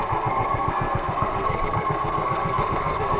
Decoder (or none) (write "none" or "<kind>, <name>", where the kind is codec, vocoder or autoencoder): codec, SNAC